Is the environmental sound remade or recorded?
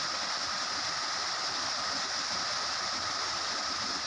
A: recorded